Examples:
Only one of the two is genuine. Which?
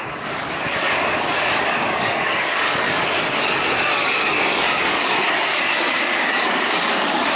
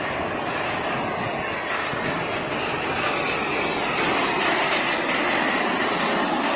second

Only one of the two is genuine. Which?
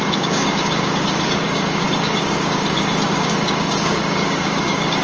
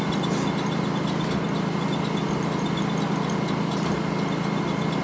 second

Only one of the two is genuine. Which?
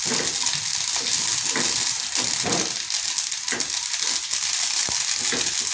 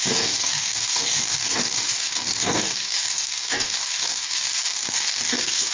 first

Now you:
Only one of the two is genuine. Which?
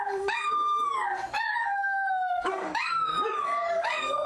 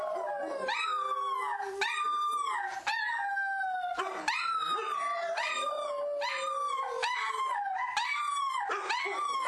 second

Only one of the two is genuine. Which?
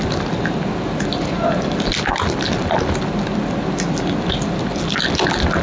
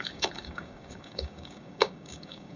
first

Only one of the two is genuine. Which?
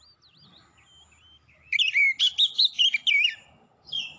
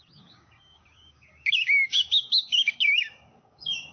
first